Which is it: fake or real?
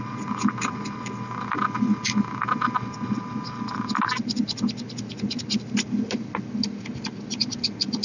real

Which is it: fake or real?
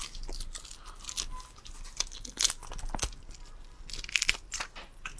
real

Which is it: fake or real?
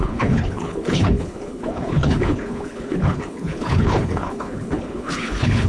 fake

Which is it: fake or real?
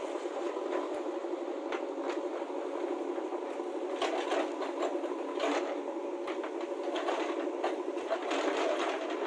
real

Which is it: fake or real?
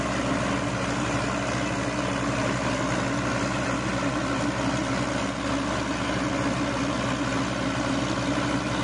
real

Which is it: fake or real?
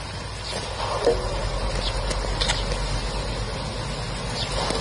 real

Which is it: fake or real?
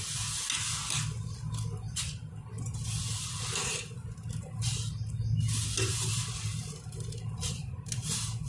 real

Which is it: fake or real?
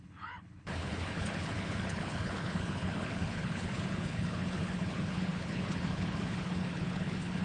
fake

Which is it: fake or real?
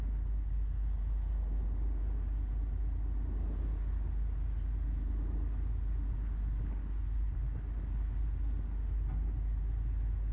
real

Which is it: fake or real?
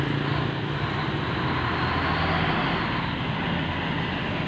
real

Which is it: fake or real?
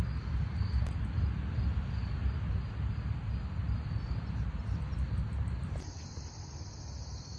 real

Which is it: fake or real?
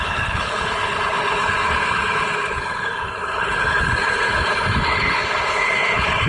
fake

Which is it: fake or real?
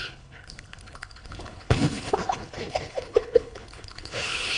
fake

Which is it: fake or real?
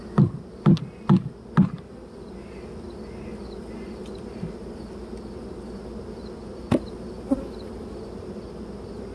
real